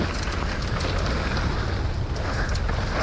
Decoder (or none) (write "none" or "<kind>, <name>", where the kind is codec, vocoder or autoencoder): none